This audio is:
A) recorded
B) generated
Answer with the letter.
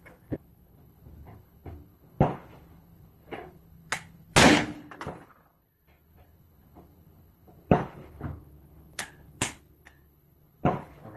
B